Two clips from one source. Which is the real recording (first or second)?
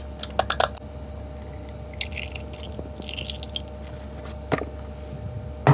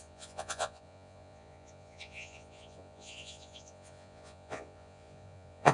first